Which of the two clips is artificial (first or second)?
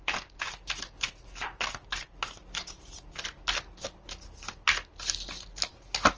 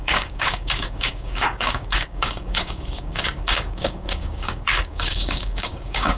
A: second